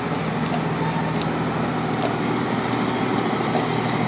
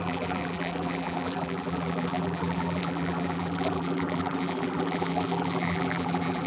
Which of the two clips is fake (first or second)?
second